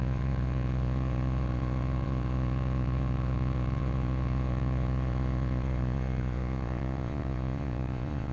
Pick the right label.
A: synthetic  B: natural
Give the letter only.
A